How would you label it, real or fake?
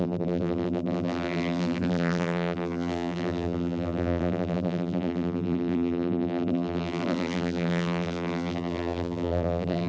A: fake